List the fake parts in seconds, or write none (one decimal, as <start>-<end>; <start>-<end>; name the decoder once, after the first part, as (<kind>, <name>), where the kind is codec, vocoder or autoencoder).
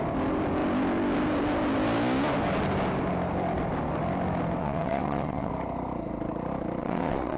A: 4.6-5.5 (vocoder, WaveNeXt); 6.8-7.4